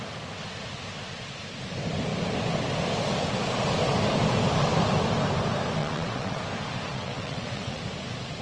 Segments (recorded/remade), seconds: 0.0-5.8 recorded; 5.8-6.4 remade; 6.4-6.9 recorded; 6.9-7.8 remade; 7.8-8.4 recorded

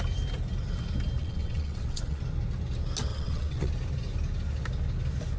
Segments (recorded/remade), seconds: 0.0-1.2 recorded; 1.2-2.2 remade; 2.2-3.1 recorded; 3.1-3.7 remade; 3.7-5.4 recorded

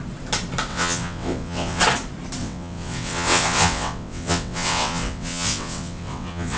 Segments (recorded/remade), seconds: 0.0-0.7 recorded; 0.7-1.8 remade; 1.8-2.4 recorded; 2.4-6.6 remade

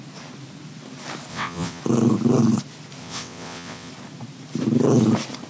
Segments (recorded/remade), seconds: 0.0-1.3 recorded; 1.3-1.8 remade; 1.8-3.0 recorded; 3.0-3.9 remade; 3.9-5.5 recorded

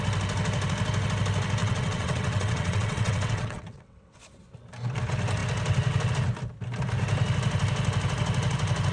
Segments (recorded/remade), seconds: 0.0-1.6 recorded; 1.6-4.2 remade; 4.2-8.9 recorded

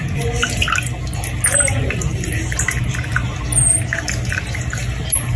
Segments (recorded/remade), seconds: 0.0-5.4 recorded